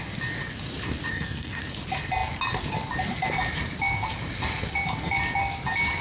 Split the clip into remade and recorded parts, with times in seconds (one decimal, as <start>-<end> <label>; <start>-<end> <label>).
0.0-1.1 recorded; 1.1-1.6 remade; 1.6-6.0 recorded